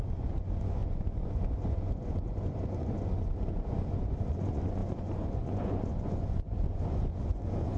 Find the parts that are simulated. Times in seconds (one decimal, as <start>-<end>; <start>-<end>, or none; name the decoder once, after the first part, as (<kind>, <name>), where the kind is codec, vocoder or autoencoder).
0.0-7.8 (vocoder, Vocos)